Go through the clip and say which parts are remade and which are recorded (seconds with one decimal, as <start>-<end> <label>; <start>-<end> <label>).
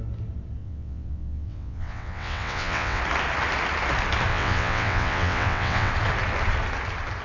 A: 0.0-0.6 recorded; 0.6-3.0 remade; 3.0-4.3 recorded; 4.3-5.9 remade; 5.9-7.2 recorded